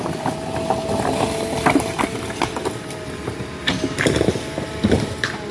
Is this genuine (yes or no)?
yes